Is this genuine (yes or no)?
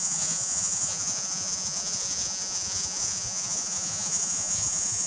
no